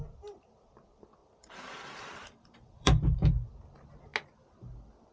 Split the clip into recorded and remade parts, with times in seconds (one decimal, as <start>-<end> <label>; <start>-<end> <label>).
0.0-1.2 recorded; 1.2-3.5 remade; 3.5-5.1 recorded